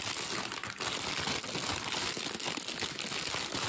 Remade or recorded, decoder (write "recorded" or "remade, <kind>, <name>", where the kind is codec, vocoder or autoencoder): recorded